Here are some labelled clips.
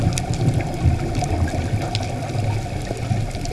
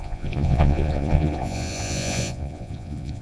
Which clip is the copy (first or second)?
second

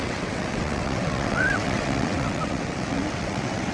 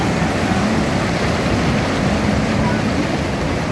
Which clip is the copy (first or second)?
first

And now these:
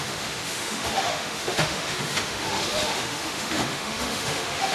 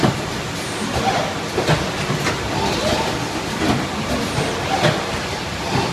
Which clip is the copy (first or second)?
first